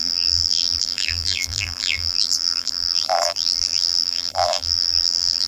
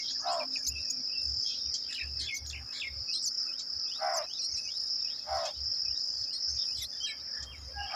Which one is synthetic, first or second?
first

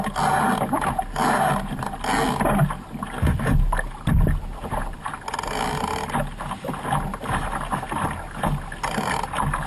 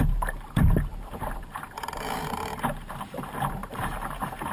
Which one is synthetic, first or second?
second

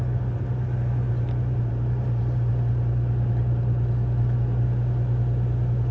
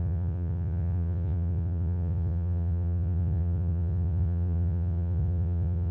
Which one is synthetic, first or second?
second